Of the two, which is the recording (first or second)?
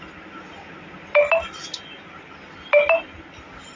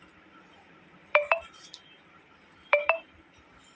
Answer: first